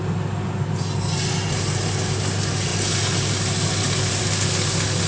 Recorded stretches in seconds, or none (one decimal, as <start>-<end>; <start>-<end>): 0.0-5.1